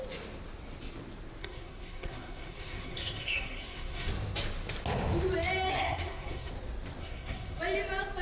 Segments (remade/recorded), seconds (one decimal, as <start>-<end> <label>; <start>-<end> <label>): 0.0-1.4 recorded; 1.4-4.1 remade; 4.1-5.7 recorded; 5.7-6.5 remade; 6.5-7.0 recorded; 7.0-7.6 remade; 7.6-8.2 recorded